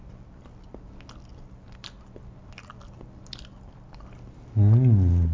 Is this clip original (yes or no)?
yes